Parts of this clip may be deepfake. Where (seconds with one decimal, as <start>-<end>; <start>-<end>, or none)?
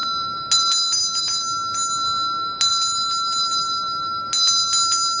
none